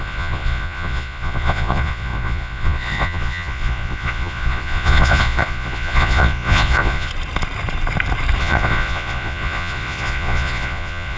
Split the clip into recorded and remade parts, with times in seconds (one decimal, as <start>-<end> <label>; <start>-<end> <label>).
0.0-7.1 remade; 7.1-8.4 recorded; 8.4-11.2 remade